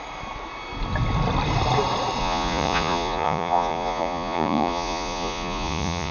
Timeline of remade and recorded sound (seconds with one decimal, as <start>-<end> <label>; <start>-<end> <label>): 0.0-2.2 recorded; 2.2-6.1 remade